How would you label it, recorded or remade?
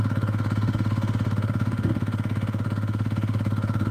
remade